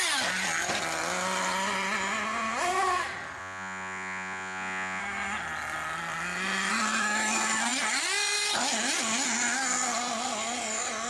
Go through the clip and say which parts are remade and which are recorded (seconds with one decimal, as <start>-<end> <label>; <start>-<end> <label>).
0.0-3.4 recorded; 3.4-5.0 remade; 5.0-11.1 recorded